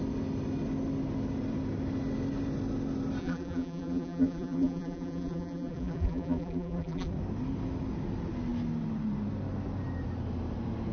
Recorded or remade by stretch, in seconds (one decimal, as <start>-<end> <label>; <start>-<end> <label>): 0.0-3.2 recorded; 3.2-7.1 remade; 7.1-10.9 recorded